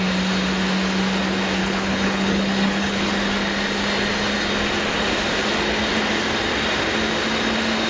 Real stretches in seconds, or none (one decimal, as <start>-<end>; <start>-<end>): 0.0-1.6; 3.1-7.9